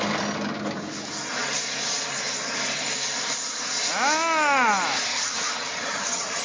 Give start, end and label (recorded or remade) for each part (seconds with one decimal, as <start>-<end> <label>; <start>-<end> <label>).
0.0-5.1 recorded; 5.1-6.4 remade